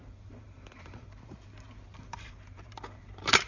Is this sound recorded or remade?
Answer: remade